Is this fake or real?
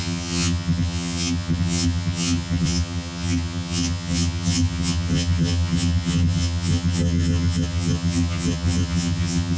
fake